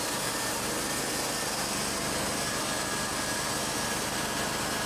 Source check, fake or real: real